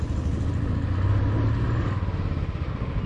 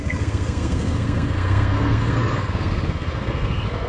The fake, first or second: second